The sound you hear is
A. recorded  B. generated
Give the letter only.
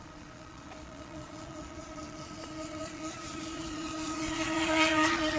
B